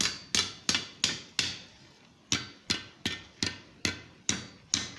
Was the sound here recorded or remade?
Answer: recorded